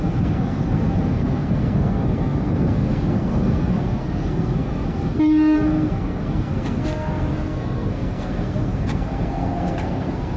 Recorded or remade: remade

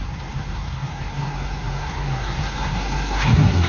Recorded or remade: remade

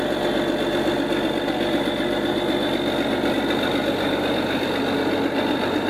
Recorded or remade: recorded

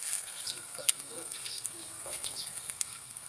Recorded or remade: remade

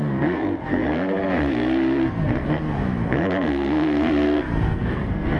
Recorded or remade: remade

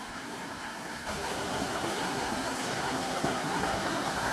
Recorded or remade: remade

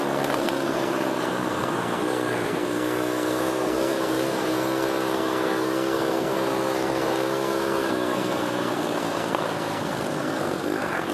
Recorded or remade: remade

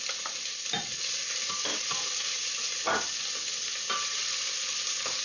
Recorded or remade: recorded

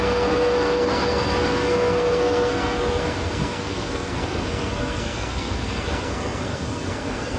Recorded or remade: remade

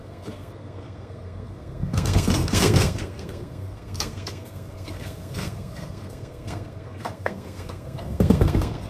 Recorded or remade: remade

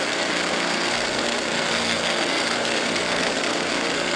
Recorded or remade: remade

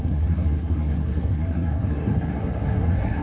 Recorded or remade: remade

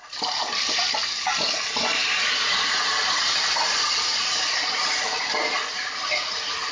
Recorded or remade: recorded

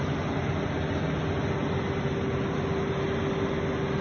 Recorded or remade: recorded